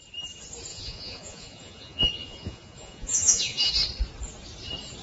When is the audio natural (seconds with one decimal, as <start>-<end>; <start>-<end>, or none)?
0.0-0.7; 3.7-5.0